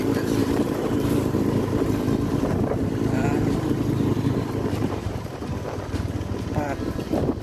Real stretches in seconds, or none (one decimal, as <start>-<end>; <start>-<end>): 0.0-0.4; 1.9-3.4; 5.3-7.4